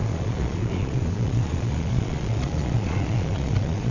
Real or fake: fake